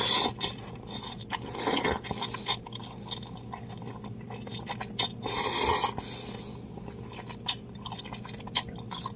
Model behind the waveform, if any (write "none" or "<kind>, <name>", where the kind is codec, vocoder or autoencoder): none